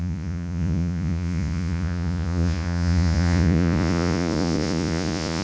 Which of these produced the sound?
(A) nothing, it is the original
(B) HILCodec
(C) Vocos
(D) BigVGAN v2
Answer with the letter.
C